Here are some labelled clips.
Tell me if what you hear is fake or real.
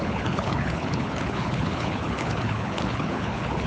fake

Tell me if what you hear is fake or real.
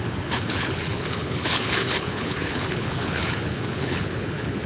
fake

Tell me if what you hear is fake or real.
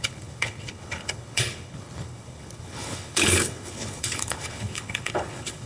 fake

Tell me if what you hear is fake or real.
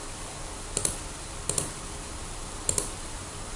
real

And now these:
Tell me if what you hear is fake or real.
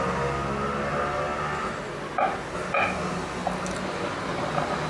real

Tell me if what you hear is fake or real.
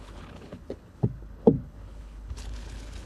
fake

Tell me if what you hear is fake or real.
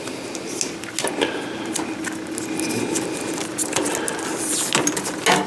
real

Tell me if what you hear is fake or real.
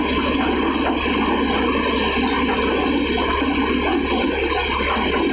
real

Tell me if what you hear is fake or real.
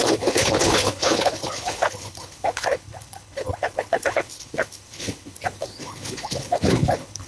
fake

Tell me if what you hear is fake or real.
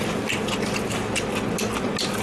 real